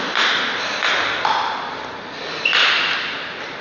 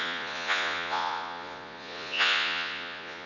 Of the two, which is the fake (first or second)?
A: second